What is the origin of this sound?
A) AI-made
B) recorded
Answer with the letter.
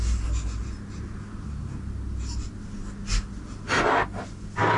B